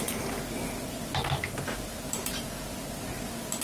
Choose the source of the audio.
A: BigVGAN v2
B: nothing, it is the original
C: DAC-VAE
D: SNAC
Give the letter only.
B